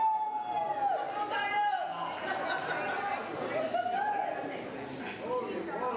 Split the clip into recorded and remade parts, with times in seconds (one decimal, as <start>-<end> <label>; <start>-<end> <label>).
0.0-6.0 recorded